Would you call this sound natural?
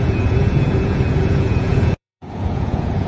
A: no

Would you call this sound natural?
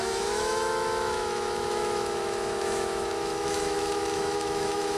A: no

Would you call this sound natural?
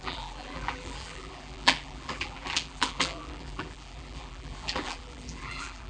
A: no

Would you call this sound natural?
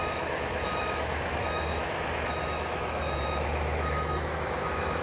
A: no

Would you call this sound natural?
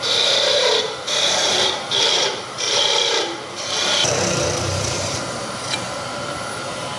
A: no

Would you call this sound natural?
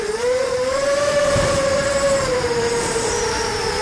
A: no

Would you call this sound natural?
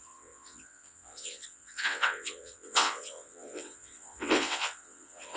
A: no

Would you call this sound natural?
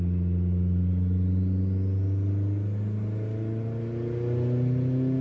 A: yes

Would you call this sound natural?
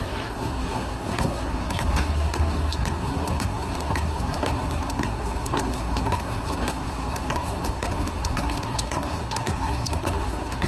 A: no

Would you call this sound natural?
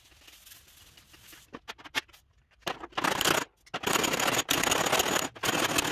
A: yes